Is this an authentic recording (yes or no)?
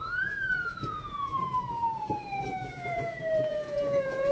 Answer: no